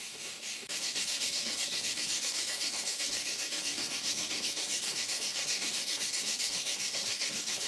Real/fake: fake